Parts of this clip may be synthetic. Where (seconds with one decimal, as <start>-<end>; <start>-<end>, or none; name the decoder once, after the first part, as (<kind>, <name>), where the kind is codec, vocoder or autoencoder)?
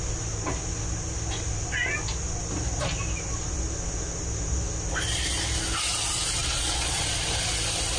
6.4-7.0 (vocoder, Vocos)